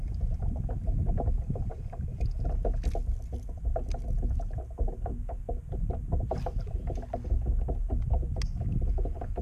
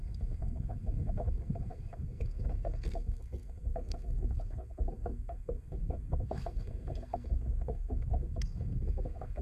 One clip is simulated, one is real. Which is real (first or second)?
first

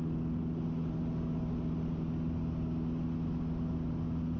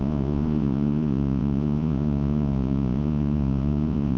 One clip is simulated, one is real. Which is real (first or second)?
first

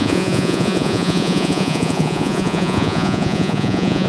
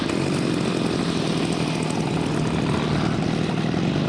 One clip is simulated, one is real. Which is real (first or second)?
second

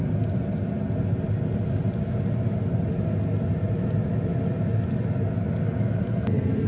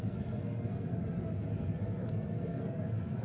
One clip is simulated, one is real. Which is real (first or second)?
first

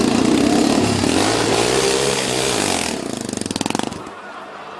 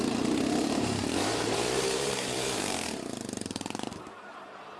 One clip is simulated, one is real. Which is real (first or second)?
first